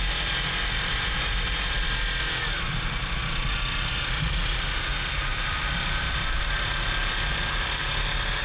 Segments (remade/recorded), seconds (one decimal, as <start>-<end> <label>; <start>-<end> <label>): 0.0-8.4 recorded